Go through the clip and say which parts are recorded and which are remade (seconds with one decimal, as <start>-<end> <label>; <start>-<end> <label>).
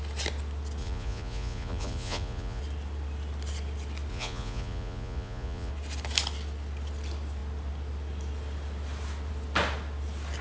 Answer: 0.0-0.8 recorded; 0.8-2.6 remade; 2.6-4.1 recorded; 4.1-5.7 remade; 5.7-10.4 recorded